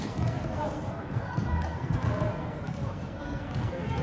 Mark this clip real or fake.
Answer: fake